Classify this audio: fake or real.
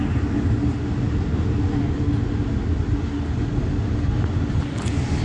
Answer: real